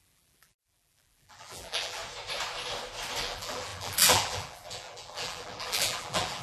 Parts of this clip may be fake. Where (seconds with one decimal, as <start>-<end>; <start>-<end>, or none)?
0.0-2.0; 3.2-6.4